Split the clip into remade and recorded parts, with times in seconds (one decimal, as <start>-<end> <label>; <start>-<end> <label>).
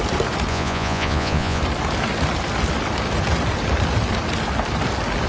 0.0-0.5 recorded; 0.5-1.6 remade; 1.6-5.3 recorded